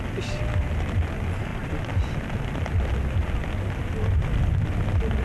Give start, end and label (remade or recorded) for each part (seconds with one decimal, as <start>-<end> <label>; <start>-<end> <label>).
0.0-5.2 recorded